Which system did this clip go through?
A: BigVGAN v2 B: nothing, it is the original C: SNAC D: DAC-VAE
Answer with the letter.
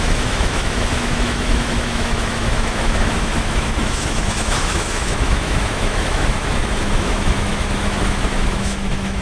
D